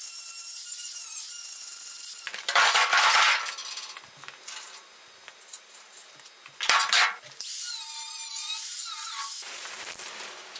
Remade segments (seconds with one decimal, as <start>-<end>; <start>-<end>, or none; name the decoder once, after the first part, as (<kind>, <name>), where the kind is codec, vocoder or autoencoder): none